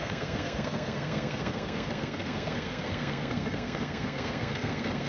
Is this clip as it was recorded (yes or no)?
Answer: no